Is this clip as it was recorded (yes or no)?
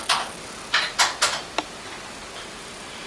yes